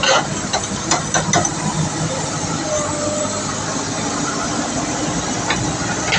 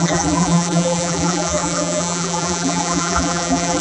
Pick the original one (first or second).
first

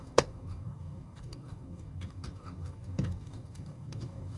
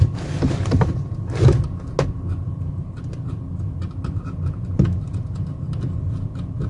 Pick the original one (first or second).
second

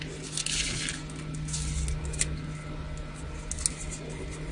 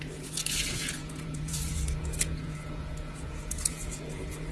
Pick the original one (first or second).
first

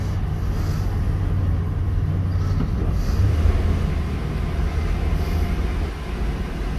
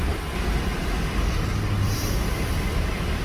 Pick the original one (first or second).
first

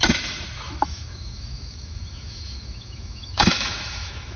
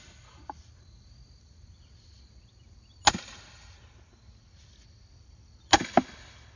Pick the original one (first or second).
second